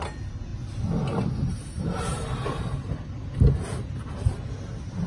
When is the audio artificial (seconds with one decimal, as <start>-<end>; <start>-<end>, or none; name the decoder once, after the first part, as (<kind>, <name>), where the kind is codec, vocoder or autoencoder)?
none